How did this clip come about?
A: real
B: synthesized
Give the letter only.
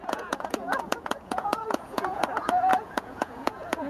B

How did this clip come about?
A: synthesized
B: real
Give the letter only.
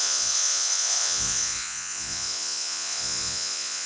A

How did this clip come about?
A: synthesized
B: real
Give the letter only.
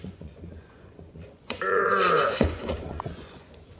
A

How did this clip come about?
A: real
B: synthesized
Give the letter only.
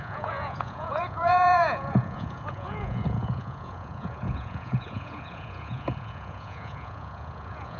B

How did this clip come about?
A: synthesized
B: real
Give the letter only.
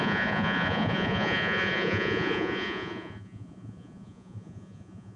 A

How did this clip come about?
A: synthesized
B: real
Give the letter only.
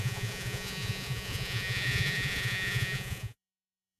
A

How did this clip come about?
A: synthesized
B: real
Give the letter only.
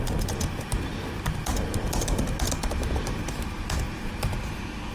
B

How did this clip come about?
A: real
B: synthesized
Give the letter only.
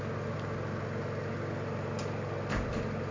A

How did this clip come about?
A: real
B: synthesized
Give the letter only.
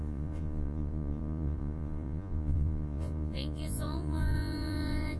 B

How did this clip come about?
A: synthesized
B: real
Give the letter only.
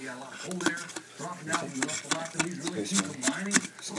B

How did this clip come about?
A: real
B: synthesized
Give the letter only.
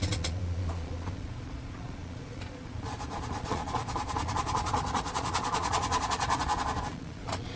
B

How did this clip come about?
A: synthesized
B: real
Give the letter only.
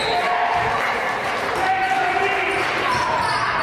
B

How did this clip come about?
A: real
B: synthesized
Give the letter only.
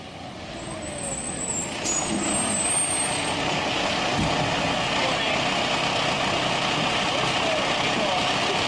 A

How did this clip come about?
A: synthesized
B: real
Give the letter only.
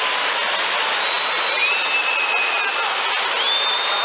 B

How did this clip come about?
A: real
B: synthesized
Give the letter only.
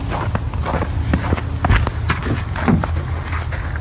A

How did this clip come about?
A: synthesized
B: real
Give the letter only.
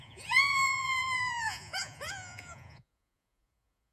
A